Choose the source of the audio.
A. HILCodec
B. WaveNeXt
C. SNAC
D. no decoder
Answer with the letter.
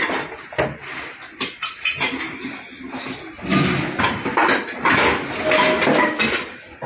D